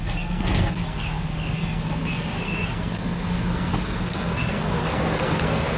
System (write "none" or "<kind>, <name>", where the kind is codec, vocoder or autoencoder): codec, SNAC